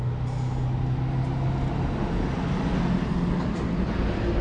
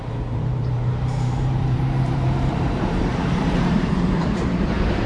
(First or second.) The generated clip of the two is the second